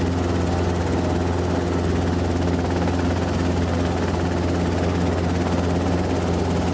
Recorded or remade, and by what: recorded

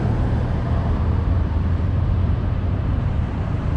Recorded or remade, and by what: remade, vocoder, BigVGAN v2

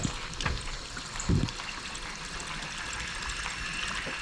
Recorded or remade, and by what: recorded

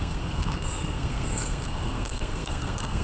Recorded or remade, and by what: remade, codec, SNAC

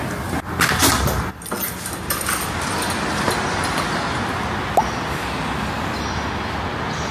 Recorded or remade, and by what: recorded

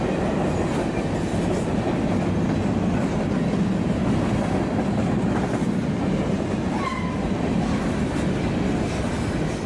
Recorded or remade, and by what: recorded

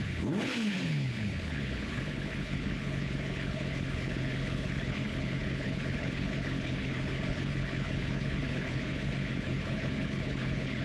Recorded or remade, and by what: remade, codec, HILCodec